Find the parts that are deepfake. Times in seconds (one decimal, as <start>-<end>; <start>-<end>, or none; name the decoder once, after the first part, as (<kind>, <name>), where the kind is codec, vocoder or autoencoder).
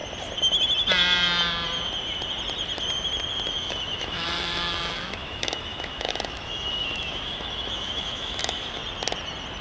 3.5-8.8 (autoencoder, DAC-VAE)